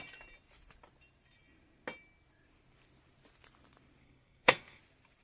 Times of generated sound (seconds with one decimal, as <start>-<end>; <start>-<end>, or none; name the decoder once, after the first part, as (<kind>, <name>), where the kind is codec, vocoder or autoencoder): 4.0-4.8 (codec, SNAC)